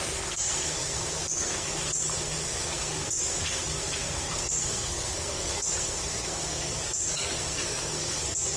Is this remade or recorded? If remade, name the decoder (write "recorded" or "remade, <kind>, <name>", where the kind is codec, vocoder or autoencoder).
remade, codec, SNAC